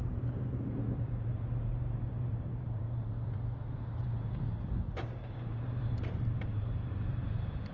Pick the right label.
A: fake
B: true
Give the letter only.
A